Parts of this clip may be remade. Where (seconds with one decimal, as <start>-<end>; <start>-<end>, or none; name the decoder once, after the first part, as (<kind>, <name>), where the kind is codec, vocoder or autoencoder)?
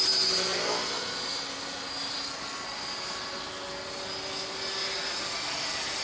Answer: none